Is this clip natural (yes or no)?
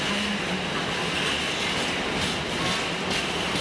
yes